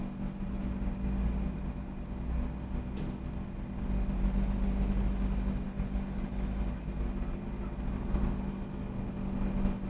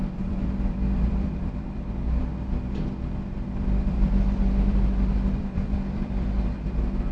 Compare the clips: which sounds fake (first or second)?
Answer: second